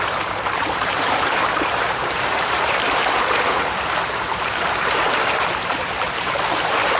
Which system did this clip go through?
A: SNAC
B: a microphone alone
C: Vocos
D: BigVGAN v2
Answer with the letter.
D